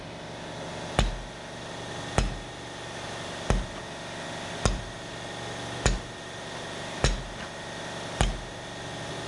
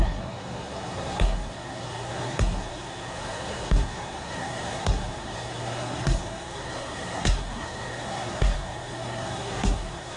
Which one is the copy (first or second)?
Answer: second